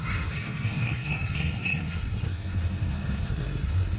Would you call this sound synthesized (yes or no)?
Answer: yes